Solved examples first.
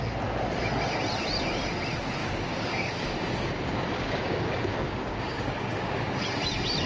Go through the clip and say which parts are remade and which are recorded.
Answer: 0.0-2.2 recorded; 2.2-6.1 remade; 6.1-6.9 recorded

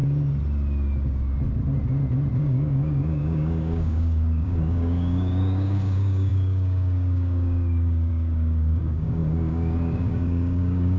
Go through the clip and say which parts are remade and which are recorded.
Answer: 0.0-2.4 recorded; 2.4-11.0 remade

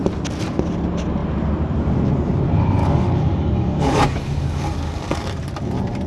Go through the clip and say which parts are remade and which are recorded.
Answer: 0.0-2.8 recorded; 2.8-5.2 remade; 5.2-6.1 recorded